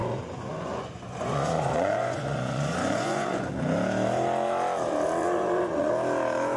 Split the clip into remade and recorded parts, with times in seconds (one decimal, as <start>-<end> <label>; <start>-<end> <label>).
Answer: 0.0-3.5 remade; 3.5-5.2 recorded; 5.2-5.9 remade; 5.9-6.6 recorded